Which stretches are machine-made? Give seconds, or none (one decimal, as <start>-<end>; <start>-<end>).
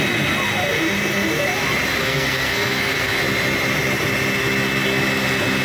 2.0-3.2